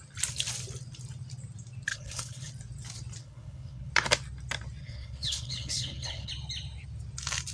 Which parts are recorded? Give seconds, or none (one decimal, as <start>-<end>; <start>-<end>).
0.0-1.9; 2.5-3.2; 3.9-4.8; 6.3-7.5